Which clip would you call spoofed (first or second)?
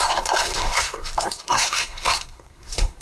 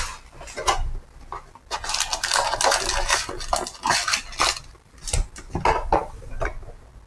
first